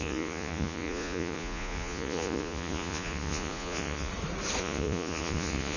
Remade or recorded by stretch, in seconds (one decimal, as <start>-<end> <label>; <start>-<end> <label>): 0.0-4.1 remade; 4.1-4.6 recorded; 4.6-5.8 remade